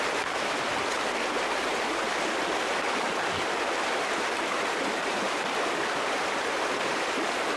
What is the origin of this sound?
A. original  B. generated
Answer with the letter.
A